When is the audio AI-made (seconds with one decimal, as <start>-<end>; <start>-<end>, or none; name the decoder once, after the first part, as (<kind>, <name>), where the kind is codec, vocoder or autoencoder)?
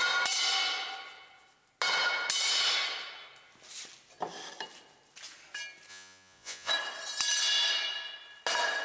5.9-6.7 (vocoder, Vocos)